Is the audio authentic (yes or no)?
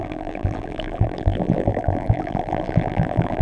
no